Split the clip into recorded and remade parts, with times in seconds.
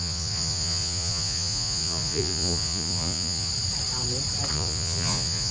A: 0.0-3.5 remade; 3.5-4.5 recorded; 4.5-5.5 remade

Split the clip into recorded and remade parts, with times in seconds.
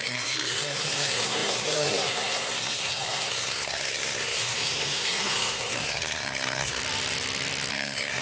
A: 0.0-6.8 remade; 6.8-7.7 recorded; 7.7-8.2 remade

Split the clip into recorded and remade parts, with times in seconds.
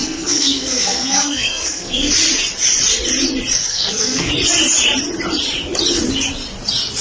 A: 0.0-2.1 remade; 2.1-3.7 recorded; 3.7-4.3 remade; 4.3-7.0 recorded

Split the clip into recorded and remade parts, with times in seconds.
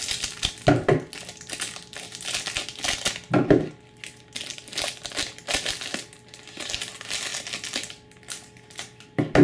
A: 0.0-9.4 recorded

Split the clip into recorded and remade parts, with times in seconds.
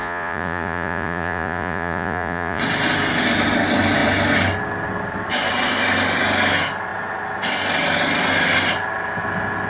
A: 0.0-2.6 remade; 2.6-9.7 recorded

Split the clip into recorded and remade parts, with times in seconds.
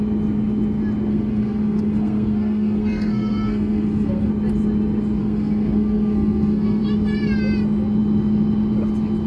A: 0.0-1.1 recorded; 1.1-4.3 remade; 4.3-5.2 recorded; 5.2-6.8 remade; 6.8-9.3 recorded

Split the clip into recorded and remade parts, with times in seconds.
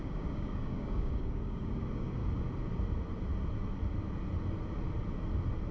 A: 0.0-2.2 remade; 2.2-5.7 recorded